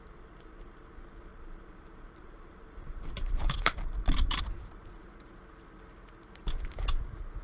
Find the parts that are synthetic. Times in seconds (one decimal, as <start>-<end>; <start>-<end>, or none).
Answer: 1.3-4.4